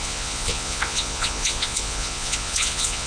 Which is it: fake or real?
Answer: fake